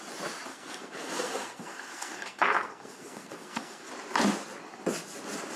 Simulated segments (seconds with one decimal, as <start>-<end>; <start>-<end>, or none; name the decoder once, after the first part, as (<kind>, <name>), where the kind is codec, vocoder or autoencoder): 0.5-3.9 (codec, SNAC)